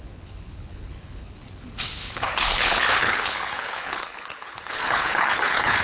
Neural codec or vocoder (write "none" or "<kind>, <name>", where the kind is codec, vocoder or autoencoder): codec, HILCodec